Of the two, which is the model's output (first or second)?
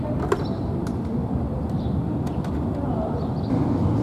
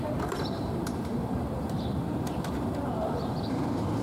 second